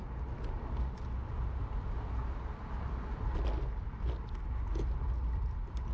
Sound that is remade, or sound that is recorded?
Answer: recorded